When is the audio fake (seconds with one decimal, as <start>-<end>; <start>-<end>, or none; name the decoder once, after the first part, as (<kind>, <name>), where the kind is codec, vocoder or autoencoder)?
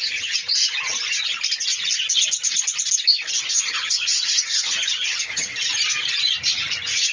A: 0.0-0.4 (vocoder, HiFi-GAN); 3.5-5.5